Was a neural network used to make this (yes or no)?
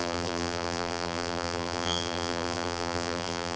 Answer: yes